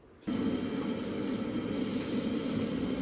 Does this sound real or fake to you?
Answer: real